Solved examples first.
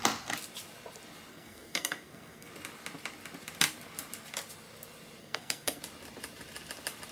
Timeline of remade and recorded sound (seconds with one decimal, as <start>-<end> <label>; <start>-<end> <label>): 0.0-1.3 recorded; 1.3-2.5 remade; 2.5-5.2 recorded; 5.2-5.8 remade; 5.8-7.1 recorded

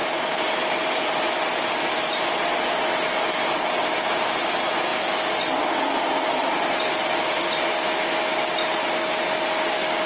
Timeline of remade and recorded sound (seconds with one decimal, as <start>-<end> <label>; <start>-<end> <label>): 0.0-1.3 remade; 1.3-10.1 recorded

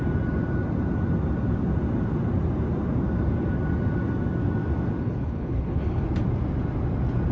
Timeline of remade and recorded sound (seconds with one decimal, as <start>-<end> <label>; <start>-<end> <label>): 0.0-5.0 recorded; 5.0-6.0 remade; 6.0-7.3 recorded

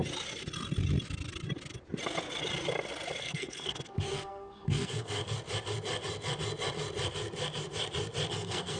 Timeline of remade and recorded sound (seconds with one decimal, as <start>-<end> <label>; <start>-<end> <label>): 0.0-3.2 recorded; 3.2-5.2 remade; 5.2-8.3 recorded; 8.3-8.8 remade